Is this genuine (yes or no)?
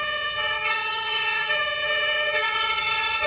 no